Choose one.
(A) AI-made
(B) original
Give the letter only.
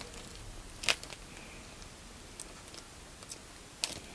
B